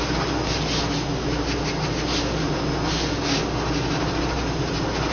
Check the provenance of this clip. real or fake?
real